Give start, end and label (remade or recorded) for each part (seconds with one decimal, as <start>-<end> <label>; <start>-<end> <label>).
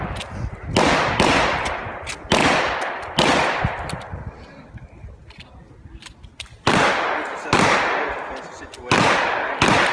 0.0-9.9 recorded